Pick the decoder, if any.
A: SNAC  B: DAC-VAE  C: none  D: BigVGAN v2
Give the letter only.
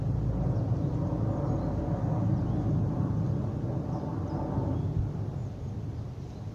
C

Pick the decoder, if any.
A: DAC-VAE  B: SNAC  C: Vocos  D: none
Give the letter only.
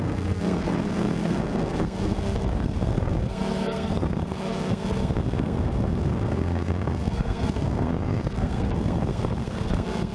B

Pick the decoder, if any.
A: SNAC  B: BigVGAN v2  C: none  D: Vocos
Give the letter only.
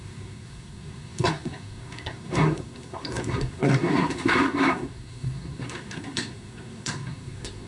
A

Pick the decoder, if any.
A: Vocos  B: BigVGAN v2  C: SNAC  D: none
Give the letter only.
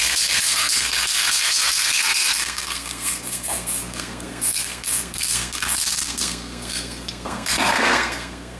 C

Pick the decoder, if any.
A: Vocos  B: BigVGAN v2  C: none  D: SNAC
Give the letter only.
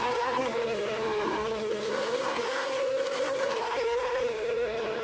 D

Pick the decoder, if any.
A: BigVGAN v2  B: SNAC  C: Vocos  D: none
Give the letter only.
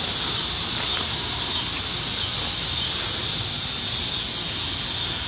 D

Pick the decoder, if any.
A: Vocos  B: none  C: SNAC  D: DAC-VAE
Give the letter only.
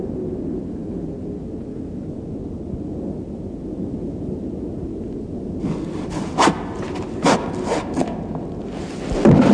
B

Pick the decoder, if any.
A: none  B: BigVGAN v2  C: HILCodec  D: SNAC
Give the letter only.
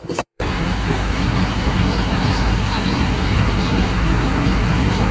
D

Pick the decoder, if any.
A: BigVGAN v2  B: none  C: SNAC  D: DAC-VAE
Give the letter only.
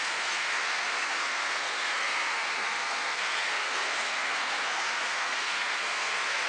C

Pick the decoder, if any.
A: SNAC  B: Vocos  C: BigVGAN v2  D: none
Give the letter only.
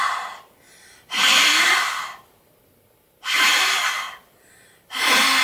D